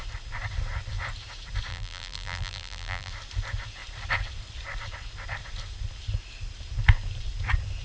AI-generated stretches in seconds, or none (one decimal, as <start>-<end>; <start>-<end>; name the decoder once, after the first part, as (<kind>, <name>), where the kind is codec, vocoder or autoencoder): 1.7-3.1 (vocoder, BigVGAN v2)